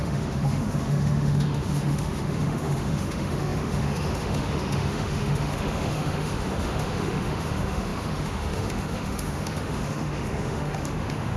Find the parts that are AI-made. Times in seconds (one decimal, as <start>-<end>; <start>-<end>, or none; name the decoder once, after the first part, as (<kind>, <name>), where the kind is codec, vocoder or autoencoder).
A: 0.0-11.4 (autoencoder, DAC-VAE)